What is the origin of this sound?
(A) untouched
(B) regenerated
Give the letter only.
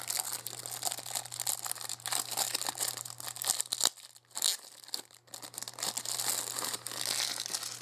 A